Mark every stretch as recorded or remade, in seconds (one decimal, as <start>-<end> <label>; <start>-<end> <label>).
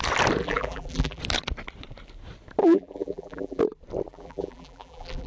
0.0-0.4 recorded; 0.4-1.2 remade; 1.2-2.6 recorded; 2.6-3.6 remade; 3.6-4.1 recorded; 4.1-5.3 remade